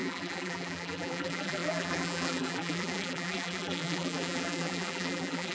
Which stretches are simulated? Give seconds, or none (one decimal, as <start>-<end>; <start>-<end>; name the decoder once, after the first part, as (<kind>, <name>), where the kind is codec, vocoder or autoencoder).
0.0-5.5 (vocoder, BigVGAN v2)

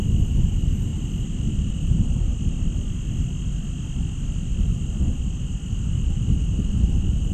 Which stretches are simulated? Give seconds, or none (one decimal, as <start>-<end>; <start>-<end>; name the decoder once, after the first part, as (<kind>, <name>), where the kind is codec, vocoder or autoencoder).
none

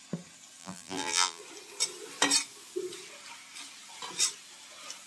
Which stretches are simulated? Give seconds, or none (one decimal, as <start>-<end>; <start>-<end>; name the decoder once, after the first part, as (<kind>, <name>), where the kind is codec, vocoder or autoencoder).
0.6-1.4 (vocoder, BigVGAN v2)

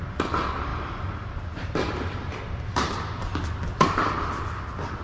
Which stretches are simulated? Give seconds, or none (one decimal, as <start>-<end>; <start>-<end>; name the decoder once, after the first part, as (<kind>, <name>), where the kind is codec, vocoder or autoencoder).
0.7-2.9 (vocoder, BigVGAN v2)

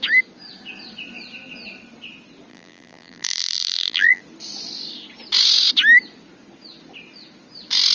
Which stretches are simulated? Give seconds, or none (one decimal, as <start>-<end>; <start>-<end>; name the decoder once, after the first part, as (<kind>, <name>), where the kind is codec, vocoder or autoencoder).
2.5-4.2 (vocoder, BigVGAN v2)